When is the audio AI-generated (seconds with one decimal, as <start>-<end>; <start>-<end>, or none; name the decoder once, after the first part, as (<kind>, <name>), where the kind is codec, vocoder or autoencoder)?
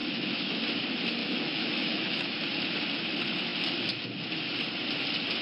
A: 0.0-0.6 (autoencoder, DAC-VAE); 1.2-2.4